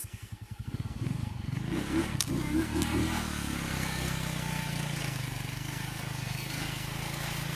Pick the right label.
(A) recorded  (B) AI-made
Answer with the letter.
B